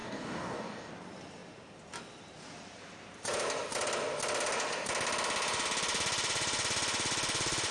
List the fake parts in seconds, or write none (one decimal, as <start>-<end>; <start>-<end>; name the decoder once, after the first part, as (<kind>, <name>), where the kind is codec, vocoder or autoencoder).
0.0-0.9 (codec, DAC)